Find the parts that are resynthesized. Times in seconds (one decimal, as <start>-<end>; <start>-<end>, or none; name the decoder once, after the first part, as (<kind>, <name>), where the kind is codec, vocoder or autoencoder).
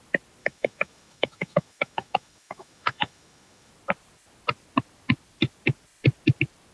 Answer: 0.4-3.7 (autoencoder, DAC-VAE)